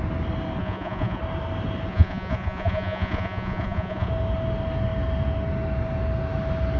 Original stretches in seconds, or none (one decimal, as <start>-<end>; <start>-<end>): 0.0-0.6; 1.2-1.9; 4.1-6.8